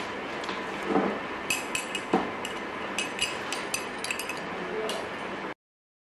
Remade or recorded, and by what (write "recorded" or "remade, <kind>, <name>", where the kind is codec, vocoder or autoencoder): recorded